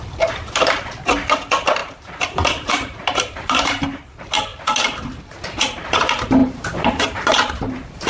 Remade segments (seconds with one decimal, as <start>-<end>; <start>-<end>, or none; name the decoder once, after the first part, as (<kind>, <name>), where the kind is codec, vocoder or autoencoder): 1.8-4.0 (vocoder, BigVGAN v2); 4.5-5.2; 6.4-7.4